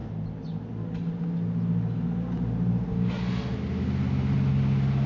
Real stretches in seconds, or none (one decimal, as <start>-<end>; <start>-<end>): 0.0-5.1